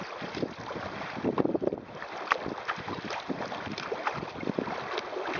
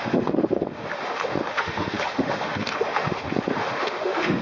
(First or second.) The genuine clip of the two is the first